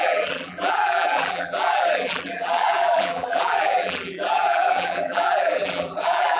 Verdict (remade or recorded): remade